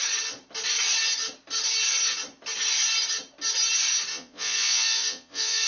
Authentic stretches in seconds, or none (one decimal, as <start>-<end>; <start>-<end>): 0.0-4.1